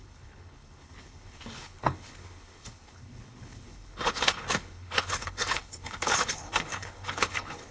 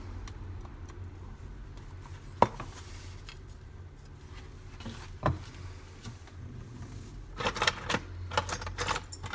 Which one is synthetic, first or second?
first